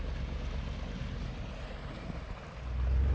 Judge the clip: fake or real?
real